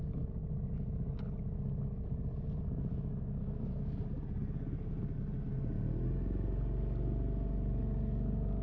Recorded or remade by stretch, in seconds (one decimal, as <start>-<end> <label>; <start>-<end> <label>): 0.0-8.6 recorded